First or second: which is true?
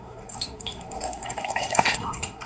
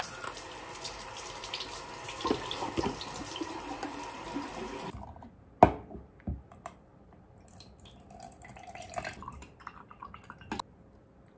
second